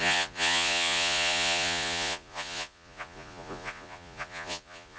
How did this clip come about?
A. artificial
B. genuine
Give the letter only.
A